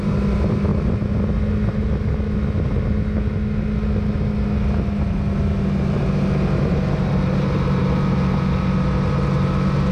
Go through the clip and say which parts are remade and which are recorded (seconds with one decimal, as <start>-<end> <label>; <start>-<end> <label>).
0.0-9.9 recorded